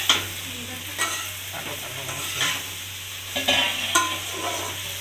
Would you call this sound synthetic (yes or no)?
no